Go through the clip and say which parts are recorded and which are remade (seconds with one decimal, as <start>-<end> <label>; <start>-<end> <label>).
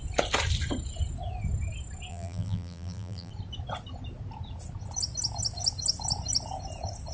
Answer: 0.0-2.1 recorded; 2.1-3.3 remade; 3.3-7.1 recorded